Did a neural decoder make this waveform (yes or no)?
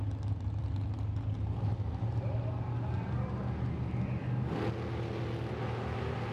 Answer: no